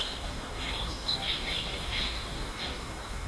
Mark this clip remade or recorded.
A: remade